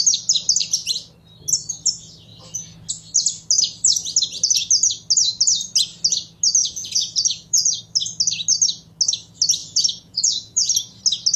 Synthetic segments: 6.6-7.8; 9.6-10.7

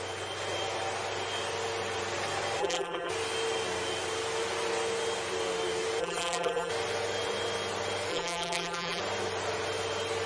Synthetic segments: 2.6-3.1; 6.0-6.7; 8.1-9.0

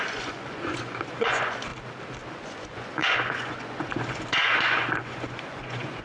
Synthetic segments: 0.0-1.7; 2.3-6.0

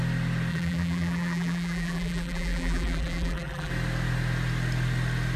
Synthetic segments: 0.5-3.7

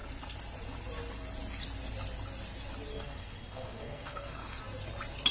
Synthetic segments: 2.9-4.6

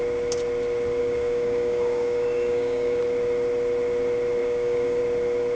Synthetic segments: 1.0-3.0; 4.4-5.0

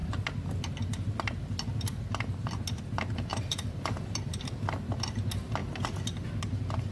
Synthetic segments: 3.3-4.7